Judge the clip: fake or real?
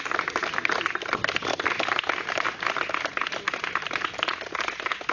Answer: real